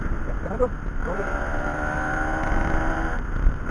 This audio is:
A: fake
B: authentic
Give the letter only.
B